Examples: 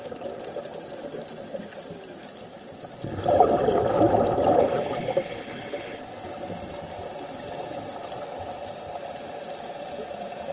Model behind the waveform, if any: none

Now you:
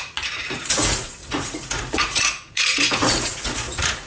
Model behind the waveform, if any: vocoder, Vocos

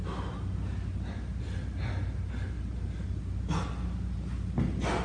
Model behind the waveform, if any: none